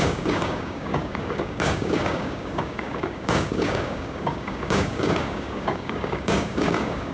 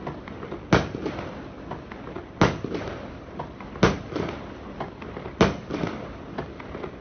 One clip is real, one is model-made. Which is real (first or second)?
second